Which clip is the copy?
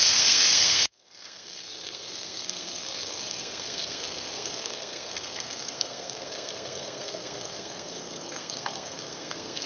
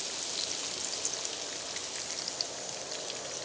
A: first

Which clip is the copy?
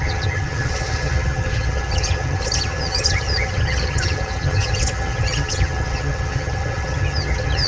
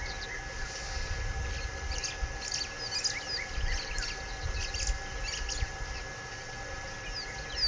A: first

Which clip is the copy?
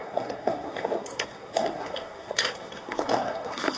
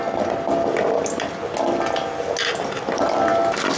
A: first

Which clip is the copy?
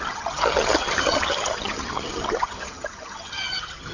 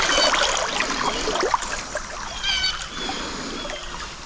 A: first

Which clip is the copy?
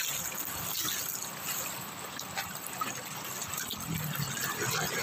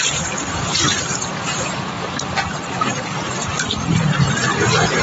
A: second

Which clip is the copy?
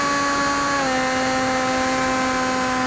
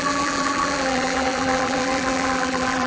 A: second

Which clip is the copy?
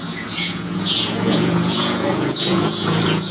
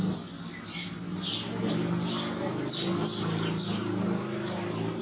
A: first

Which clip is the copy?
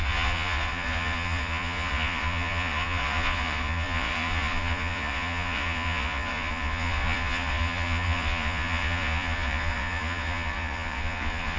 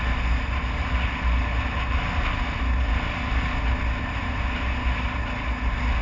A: first